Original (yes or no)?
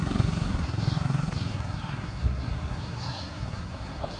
no